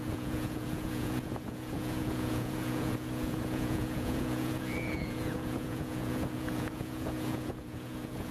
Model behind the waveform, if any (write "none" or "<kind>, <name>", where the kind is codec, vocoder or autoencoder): vocoder, Vocos